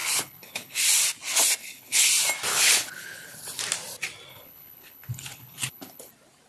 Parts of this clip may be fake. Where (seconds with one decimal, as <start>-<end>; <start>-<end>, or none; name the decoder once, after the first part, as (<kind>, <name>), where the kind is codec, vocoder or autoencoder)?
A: 0.0-0.8 (codec, HILCodec); 1.6-2.1; 2.5-3.6; 4.3-6.1